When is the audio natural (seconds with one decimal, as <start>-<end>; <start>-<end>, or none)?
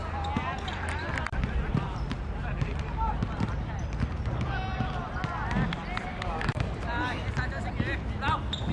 0.0-6.1; 6.8-8.7